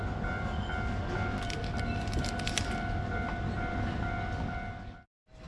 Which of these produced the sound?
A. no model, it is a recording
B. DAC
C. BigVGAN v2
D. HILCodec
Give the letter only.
A